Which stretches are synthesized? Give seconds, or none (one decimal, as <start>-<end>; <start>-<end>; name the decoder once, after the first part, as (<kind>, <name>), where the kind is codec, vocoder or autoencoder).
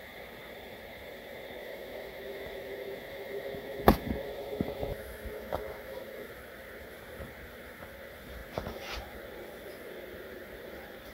1.6-6.3 (autoencoder, DAC-VAE)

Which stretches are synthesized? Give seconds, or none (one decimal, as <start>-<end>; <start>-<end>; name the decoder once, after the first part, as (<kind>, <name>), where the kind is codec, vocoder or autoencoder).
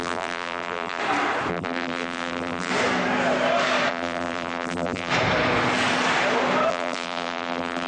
0.0-1.0 (vocoder, BigVGAN v2); 1.5-2.7; 3.9-5.1; 6.7-7.9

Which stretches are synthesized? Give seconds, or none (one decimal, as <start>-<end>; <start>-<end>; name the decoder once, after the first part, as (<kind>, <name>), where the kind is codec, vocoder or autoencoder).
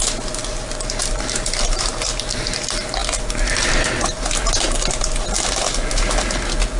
none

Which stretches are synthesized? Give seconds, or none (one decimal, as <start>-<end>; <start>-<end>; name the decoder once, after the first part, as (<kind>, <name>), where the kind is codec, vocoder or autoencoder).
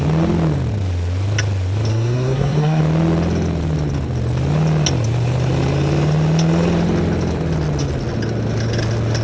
1.9-2.8 (codec, SNAC)